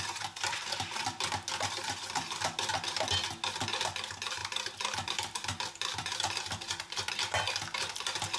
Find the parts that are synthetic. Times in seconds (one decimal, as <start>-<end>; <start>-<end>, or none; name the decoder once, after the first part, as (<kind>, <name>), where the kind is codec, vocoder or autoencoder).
4.4-7.1 (vocoder, BigVGAN v2)